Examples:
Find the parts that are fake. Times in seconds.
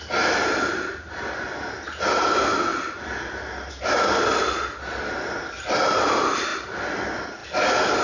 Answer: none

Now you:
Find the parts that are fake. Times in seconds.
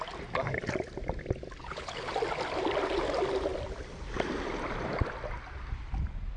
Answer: 1.6-2.1 (codec, HILCodec)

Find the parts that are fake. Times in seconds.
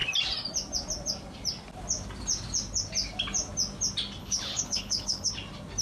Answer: 4.2-5.3 (codec, HILCodec)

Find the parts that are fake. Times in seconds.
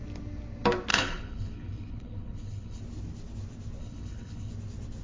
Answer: 0.9-2.8 (codec, HILCodec); 3.8-4.5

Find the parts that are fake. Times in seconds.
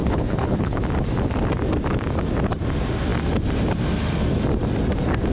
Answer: 0.0-0.8 (codec, HILCodec)